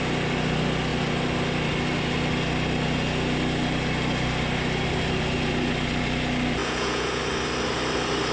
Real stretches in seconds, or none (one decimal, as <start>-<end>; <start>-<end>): 0.0-6.6; 7.2-8.3